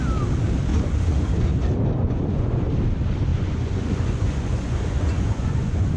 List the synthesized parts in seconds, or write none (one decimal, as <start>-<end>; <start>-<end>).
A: 0.7-1.5; 2.0-2.7; 3.3-6.0